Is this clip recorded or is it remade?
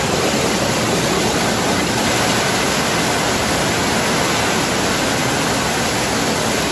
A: recorded